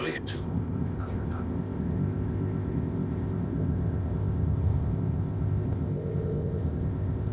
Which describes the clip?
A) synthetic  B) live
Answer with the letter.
A